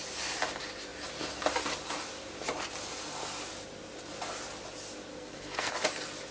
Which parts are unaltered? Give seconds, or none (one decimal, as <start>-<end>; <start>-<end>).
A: 0.0-5.1; 5.7-6.3